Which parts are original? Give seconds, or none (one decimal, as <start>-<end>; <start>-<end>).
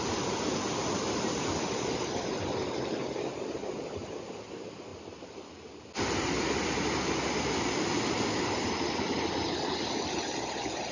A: 0.0-10.9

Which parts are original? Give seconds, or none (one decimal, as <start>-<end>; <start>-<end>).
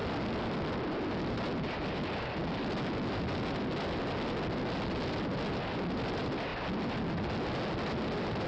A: 0.0-8.5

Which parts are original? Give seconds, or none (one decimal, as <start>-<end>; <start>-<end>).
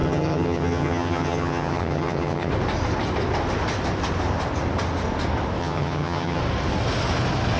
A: 2.5-5.6; 6.4-7.6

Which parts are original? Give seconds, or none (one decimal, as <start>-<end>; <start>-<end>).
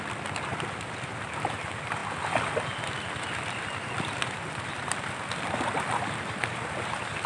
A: 0.0-7.3